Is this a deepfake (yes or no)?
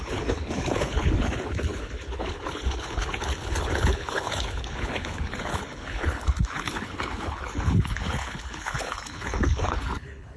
yes